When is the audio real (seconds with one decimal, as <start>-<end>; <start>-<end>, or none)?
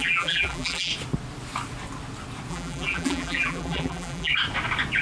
0.9-2.5; 4.3-5.0